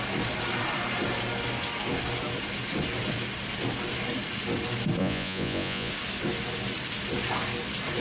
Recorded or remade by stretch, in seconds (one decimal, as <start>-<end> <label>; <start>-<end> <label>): 0.0-5.0 recorded; 5.0-5.9 remade; 5.9-8.0 recorded